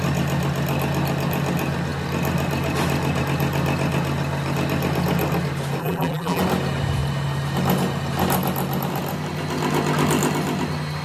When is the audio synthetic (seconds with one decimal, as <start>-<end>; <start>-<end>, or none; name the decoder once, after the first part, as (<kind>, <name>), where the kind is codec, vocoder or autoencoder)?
5.8-6.4 (vocoder, BigVGAN v2)